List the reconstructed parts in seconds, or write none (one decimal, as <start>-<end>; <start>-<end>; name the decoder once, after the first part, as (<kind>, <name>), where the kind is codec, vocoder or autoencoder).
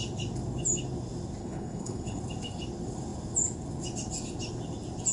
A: 1.4-2.2 (codec, HILCodec)